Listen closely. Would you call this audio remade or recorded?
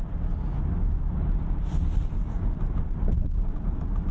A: recorded